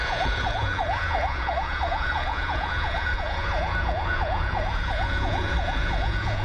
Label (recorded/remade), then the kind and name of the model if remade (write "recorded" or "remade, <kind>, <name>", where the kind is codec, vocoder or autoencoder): remade, vocoder, Vocos